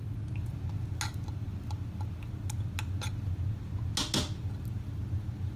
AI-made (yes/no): no